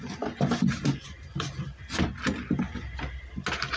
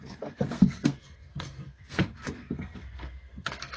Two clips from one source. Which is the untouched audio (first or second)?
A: first